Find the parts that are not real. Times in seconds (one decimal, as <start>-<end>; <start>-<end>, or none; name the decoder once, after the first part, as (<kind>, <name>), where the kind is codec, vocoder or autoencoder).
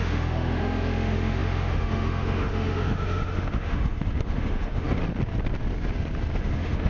0.0-5.0 (autoencoder, DAC-VAE); 6.4-6.9